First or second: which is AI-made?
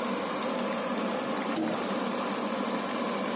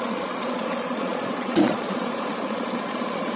second